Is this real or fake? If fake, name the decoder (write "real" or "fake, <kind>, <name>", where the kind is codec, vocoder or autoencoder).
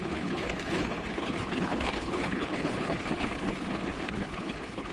fake, codec, HILCodec